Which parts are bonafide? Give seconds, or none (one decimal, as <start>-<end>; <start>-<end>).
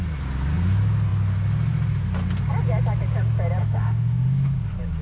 0.0-3.6; 4.6-5.0